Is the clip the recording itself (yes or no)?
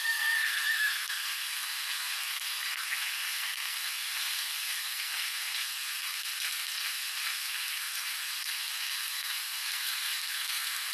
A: no